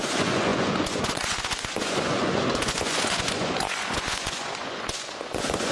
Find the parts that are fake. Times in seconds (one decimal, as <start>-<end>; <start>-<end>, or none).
0.0-5.7